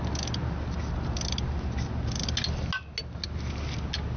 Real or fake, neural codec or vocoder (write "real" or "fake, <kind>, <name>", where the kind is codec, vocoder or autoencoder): real